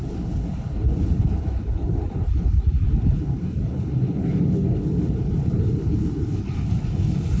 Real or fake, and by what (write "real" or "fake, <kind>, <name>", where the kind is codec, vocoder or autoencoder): fake, codec, HILCodec